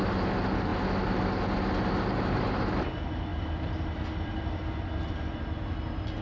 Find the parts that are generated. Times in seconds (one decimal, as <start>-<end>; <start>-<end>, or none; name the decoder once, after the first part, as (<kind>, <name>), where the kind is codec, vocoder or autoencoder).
none